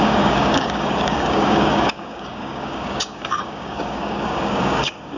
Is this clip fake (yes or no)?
yes